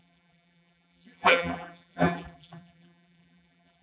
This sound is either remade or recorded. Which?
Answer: remade